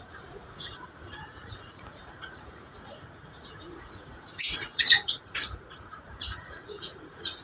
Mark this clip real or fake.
fake